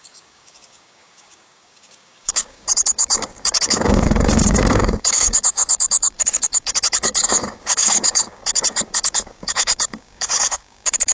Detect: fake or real fake